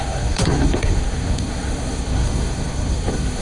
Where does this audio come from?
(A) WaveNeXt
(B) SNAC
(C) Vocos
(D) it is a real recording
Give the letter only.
B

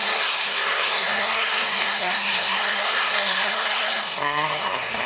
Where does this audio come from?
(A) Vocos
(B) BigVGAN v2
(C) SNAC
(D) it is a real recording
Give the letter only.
C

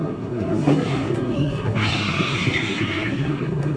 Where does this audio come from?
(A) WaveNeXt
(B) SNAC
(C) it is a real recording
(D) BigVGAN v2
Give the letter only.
B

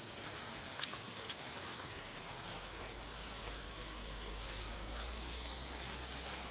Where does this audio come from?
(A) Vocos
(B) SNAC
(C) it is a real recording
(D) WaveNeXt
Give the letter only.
B